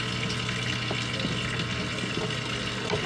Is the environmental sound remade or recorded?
recorded